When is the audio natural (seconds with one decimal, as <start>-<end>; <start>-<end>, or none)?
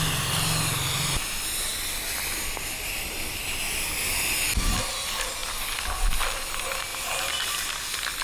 0.0-8.2